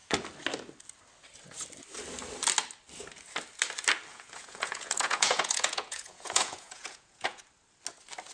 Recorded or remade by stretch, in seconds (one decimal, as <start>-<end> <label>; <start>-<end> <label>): 0.0-4.1 recorded; 4.1-7.4 remade; 7.4-8.3 recorded